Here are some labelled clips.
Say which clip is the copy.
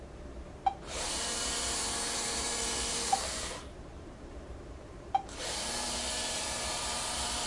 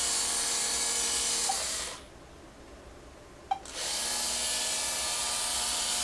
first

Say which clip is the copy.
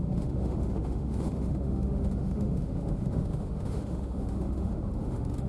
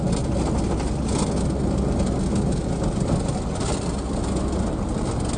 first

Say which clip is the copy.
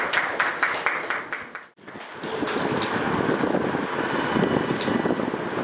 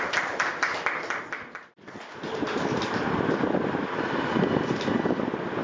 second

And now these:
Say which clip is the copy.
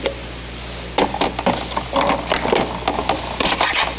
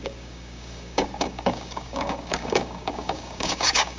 second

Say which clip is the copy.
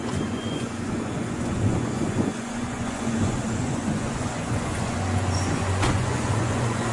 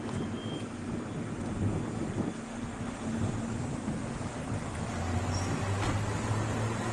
first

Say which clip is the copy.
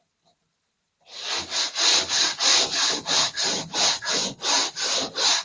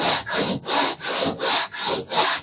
first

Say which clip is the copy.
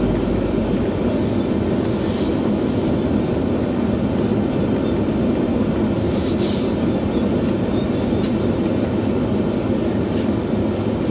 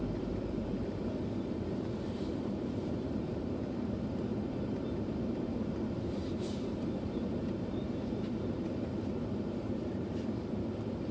second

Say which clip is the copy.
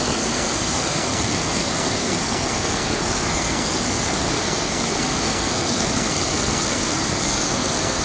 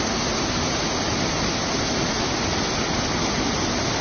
first